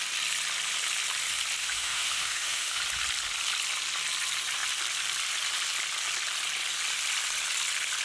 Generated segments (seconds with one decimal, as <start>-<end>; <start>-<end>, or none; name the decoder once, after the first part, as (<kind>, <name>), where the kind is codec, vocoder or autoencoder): 1.6-2.8 (autoencoder, DAC-VAE)